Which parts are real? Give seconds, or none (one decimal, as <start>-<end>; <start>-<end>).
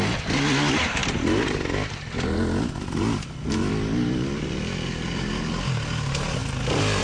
0.0-7.0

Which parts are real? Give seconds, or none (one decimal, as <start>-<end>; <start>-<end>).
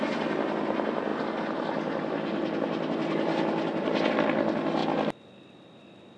0.0-6.2